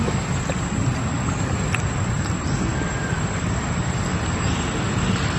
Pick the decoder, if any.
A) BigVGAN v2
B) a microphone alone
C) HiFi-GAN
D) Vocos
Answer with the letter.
A